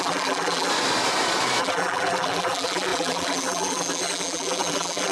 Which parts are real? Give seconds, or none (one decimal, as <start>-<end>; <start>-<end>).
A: 0.7-1.6